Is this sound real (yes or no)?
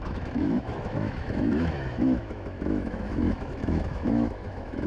no